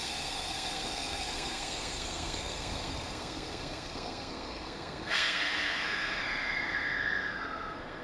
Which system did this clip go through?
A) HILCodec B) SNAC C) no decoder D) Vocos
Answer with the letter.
B